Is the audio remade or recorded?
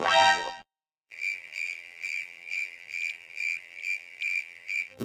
remade